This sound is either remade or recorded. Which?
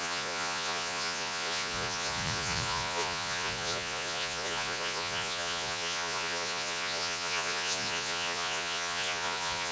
remade